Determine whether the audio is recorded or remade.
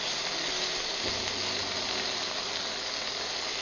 recorded